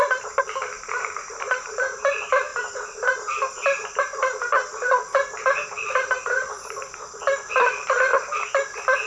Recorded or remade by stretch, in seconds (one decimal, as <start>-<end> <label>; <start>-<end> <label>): 0.0-2.5 remade; 2.5-4.0 recorded; 4.0-8.1 remade; 8.1-9.1 recorded